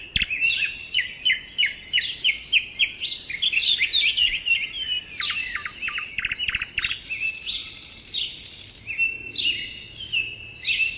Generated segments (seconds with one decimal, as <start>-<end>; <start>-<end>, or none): none